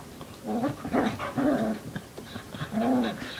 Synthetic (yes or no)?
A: no